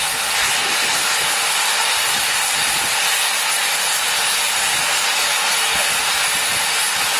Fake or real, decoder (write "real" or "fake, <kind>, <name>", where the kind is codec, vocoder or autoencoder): real